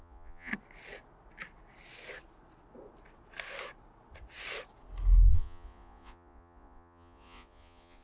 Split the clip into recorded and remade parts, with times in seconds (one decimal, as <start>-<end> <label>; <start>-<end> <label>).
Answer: 0.0-0.5 remade; 0.5-5.3 recorded; 5.3-8.0 remade

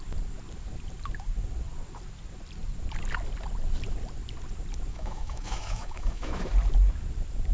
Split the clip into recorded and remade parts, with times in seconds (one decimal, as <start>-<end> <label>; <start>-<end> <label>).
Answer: 0.0-4.9 recorded; 4.9-6.5 remade; 6.5-7.5 recorded

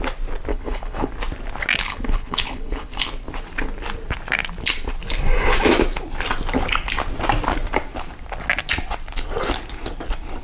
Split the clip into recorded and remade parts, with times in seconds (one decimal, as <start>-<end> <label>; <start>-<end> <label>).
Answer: 0.0-0.5 recorded; 0.5-1.1 remade; 1.1-1.9 recorded; 1.9-2.9 remade; 2.9-10.4 recorded

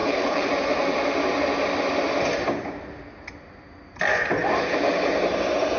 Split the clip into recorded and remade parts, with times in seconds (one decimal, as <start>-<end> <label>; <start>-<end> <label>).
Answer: 0.0-0.5 remade; 0.5-5.8 recorded

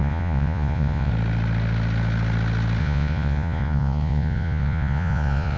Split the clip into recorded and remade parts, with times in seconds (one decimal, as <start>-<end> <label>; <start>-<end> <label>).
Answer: 0.0-1.1 remade; 1.1-2.8 recorded; 2.8-5.6 remade

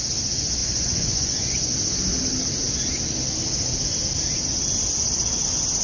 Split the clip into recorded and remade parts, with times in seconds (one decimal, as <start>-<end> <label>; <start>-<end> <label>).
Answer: 0.0-0.6 recorded; 0.6-1.7 remade; 1.7-5.8 recorded

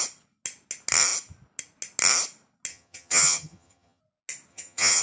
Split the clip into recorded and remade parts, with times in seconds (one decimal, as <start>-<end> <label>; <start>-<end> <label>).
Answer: 0.0-2.7 recorded; 2.7-4.0 remade; 4.0-4.5 recorded; 4.5-5.0 remade